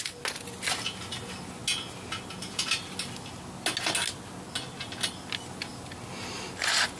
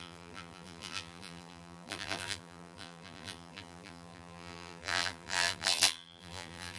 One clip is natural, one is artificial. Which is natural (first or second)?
first